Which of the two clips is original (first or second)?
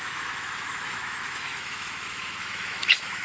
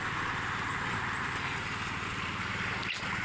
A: second